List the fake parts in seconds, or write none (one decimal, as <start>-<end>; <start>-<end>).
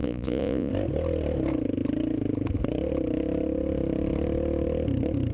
0.0-0.7